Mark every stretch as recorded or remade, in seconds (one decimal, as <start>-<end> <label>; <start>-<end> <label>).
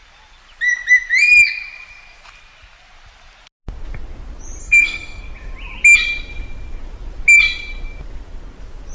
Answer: 0.0-4.6 recorded; 4.6-5.2 remade; 5.2-8.9 recorded